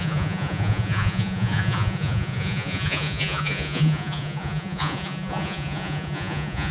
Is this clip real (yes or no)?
no